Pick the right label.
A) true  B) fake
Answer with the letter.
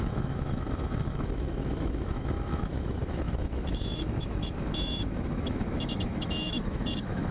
B